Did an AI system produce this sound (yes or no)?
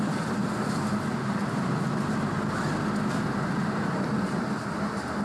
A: no